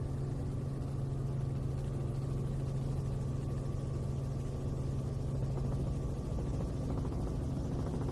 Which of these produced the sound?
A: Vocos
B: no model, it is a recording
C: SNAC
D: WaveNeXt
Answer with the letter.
B